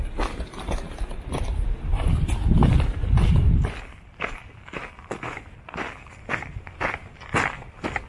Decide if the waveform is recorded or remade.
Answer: recorded